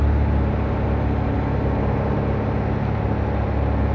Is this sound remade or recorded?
recorded